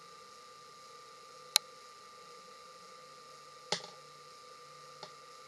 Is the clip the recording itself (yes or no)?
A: yes